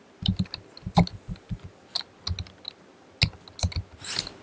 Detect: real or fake real